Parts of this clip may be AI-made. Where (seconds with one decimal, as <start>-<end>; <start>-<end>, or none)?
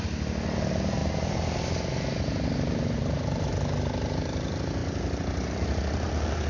none